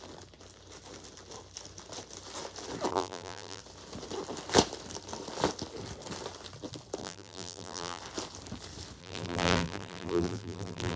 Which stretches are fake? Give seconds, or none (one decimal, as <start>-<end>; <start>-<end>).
2.9-3.6; 7.0-8.0; 9.0-11.0